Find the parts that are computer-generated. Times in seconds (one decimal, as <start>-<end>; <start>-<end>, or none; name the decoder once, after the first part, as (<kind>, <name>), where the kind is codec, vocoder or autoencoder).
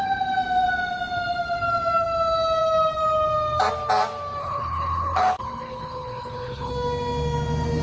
4.4-6.7 (codec, HILCodec)